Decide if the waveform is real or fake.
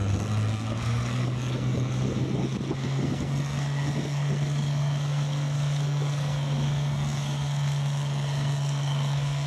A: fake